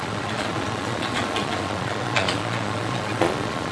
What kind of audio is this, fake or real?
fake